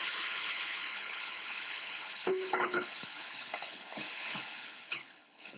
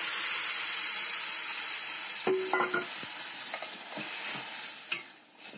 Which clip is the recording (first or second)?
second